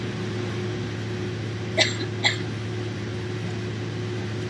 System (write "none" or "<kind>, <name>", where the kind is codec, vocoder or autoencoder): none